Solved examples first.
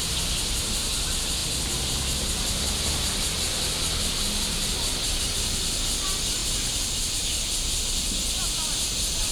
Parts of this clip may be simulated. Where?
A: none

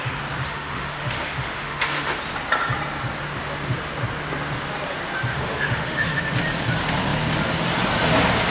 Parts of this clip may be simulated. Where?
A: 0.4-2.1 (autoencoder, DAC-VAE); 5.3-6.2